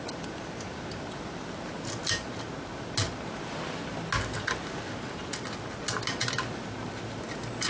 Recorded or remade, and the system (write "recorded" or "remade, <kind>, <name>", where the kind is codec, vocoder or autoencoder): recorded